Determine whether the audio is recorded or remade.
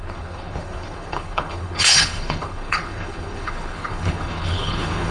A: remade